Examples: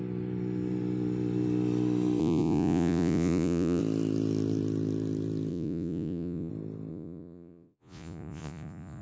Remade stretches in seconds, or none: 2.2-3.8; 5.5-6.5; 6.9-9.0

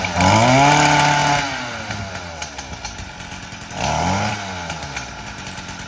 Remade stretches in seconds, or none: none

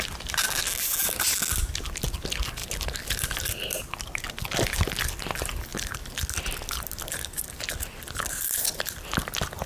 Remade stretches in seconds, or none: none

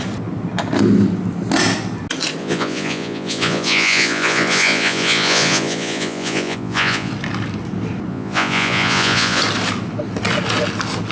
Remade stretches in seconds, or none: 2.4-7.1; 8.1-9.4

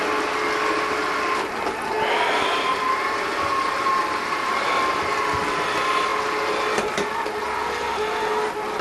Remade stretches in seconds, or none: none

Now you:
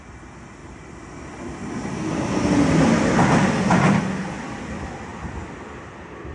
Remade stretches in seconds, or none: none

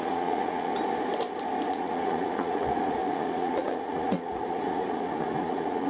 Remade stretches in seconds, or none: 0.0-0.7; 1.7-5.9